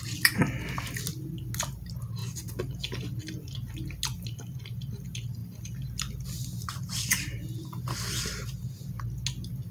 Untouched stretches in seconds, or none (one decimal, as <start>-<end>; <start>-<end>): 0.0-5.4; 9.0-9.7